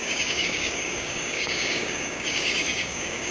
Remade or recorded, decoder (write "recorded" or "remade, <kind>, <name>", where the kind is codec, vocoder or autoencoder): remade, codec, DAC